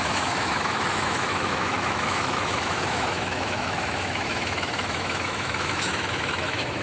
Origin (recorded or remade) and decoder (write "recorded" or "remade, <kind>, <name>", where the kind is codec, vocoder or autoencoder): remade, autoencoder, DAC-VAE